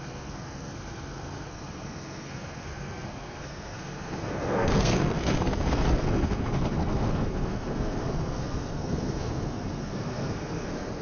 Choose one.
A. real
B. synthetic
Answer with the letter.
B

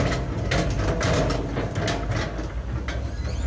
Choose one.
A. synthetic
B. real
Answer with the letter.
B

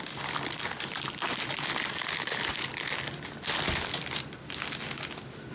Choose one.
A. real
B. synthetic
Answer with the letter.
A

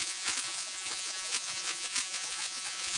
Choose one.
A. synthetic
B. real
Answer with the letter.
A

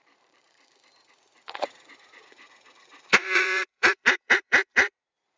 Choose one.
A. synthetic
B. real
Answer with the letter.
A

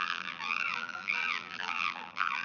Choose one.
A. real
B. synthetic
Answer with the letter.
B